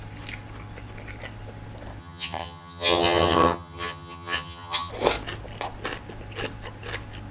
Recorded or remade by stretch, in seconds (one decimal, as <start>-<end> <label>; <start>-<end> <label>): 0.0-2.0 recorded; 2.0-4.9 remade; 4.9-7.3 recorded